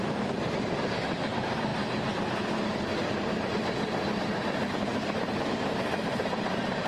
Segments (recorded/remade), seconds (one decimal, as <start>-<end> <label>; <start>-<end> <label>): 0.0-5.9 recorded; 5.9-6.5 remade; 6.5-6.9 recorded